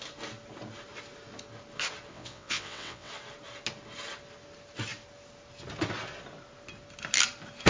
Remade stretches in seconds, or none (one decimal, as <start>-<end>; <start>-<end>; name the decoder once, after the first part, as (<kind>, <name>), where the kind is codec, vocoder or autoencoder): 2.1-3.1 (vocoder, WaveNeXt)